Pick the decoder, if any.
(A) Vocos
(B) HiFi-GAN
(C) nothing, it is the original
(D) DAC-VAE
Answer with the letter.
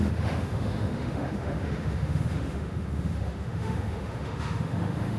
D